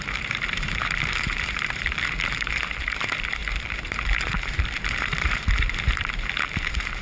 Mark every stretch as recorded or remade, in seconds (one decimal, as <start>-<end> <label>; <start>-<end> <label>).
0.0-7.0 remade